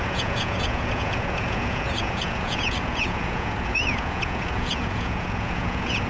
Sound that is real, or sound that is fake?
fake